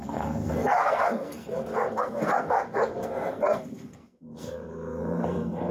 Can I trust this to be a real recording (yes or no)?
no